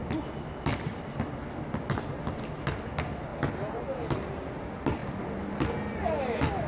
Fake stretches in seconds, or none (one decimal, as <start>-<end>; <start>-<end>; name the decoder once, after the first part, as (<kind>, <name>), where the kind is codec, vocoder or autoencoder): none